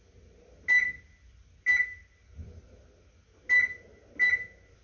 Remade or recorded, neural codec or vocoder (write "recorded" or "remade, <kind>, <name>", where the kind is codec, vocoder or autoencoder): recorded